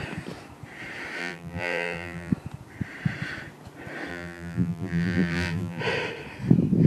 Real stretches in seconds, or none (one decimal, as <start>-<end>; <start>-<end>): 0.0-1.2; 2.3-4.1; 5.8-6.9